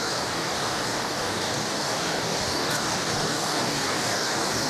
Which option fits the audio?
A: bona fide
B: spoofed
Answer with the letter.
B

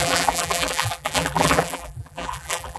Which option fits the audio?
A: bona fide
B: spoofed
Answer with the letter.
B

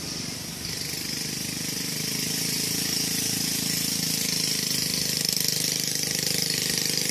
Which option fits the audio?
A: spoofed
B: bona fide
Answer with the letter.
B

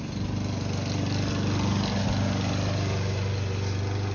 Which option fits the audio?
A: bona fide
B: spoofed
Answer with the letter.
A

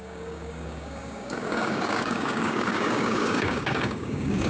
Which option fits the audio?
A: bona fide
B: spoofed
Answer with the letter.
B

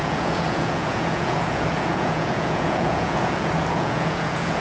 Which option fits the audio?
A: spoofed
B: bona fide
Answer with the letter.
A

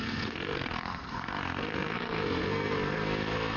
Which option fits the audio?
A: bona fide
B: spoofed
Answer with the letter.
B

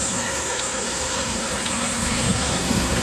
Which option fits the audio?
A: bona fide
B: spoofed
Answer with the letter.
B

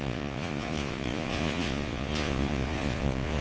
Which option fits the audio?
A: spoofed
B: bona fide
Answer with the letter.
A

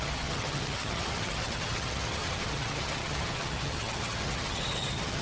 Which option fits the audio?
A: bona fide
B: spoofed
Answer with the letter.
B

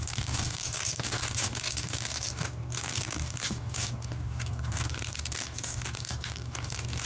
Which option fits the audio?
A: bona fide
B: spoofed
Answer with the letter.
B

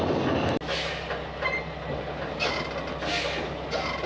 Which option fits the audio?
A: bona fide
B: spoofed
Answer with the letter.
A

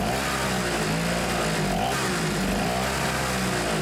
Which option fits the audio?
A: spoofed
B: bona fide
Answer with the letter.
B